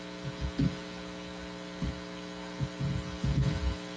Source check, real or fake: real